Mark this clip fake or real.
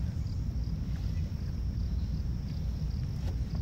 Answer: real